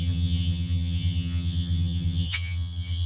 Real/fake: fake